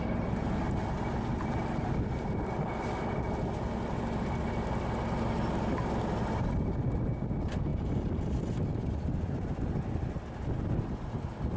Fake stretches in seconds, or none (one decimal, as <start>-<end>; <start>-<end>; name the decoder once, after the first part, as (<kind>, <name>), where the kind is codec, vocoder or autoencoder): none